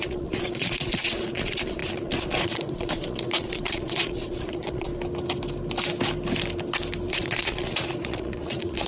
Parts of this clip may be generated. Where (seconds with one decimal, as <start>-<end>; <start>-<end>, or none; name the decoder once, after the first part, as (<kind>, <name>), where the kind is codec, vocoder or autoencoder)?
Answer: 0.0-4.9 (vocoder, Vocos); 7.1-8.9